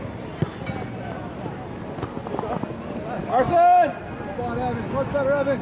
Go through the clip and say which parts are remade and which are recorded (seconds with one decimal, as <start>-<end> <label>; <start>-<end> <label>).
0.0-5.6 recorded

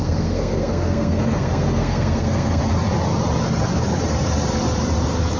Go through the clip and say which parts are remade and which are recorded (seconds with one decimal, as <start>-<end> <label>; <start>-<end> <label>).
0.0-2.6 remade; 2.6-5.4 recorded

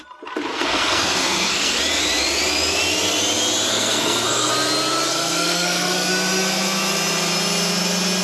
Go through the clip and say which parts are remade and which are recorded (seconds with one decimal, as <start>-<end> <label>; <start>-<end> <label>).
0.0-0.5 recorded; 0.5-1.8 remade; 1.8-3.7 recorded; 3.7-4.5 remade; 4.5-5.1 recorded; 5.1-6.1 remade; 6.1-8.2 recorded